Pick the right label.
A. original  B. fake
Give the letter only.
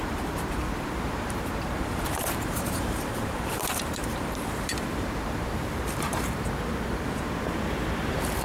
B